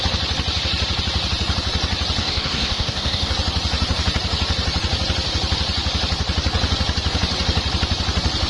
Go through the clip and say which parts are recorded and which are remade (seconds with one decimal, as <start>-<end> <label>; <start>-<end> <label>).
0.0-2.2 recorded; 2.2-3.3 remade; 3.3-8.5 recorded